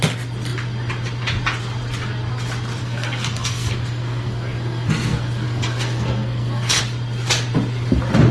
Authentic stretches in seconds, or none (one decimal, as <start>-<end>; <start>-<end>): 0.0-2.8; 6.8-8.3